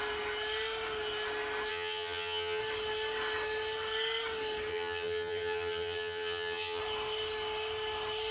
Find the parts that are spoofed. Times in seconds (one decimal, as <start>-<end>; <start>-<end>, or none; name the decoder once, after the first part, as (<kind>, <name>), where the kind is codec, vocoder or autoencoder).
1.7-2.6 (vocoder, HiFi-GAN); 4.7-6.8